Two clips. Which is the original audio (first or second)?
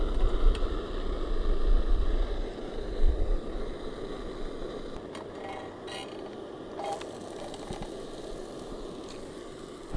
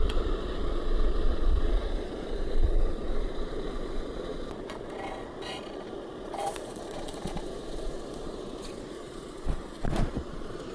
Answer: first